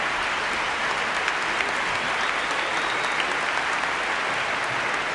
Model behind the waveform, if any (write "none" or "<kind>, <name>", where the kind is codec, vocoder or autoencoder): none